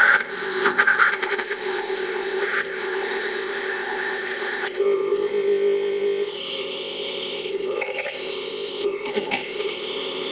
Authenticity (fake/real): fake